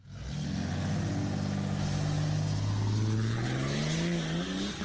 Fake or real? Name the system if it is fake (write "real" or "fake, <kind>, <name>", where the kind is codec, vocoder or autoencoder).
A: real